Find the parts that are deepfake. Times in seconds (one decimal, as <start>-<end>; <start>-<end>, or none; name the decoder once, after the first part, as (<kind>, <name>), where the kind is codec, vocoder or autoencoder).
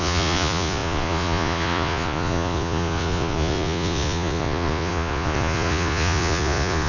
0.0-6.9 (vocoder, Vocos)